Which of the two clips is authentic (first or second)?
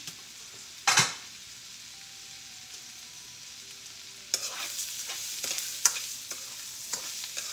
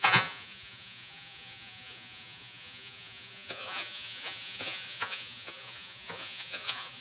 first